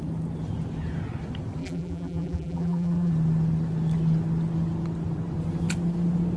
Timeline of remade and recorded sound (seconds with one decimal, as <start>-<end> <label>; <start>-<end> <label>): 0.0-1.6 recorded; 1.6-3.1 remade; 3.1-6.4 recorded

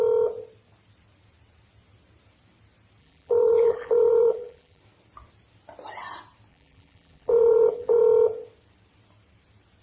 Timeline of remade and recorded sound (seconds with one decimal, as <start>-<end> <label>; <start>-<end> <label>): 0.0-3.0 recorded; 3.0-4.8 remade; 4.8-6.5 recorded; 6.5-8.0 remade; 8.0-9.8 recorded

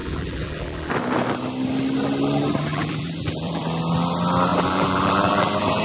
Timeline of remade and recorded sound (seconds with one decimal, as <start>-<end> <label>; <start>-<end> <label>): 0.0-0.9 remade; 0.9-2.7 recorded; 2.7-3.6 remade; 3.6-4.5 recorded; 4.5-5.8 remade

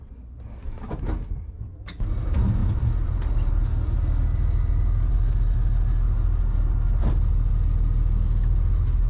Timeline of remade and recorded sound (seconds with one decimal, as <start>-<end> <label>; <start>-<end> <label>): 0.0-9.1 recorded

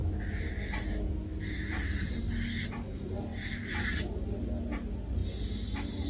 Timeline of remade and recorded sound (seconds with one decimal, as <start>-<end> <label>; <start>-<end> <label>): 0.0-6.1 recorded

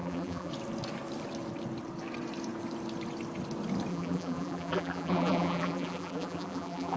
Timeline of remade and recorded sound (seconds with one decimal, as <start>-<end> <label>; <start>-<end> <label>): 0.0-0.5 remade; 0.5-3.9 recorded; 3.9-7.0 remade

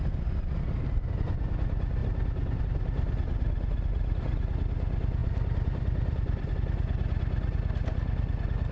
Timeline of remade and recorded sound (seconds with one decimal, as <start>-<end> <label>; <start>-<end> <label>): 0.0-5.2 recorded; 5.2-6.5 remade; 6.5-8.7 recorded